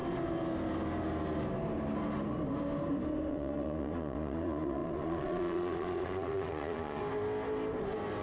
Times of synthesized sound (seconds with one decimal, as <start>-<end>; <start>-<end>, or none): 3.3-7.0